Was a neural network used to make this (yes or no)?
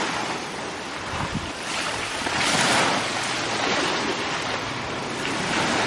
no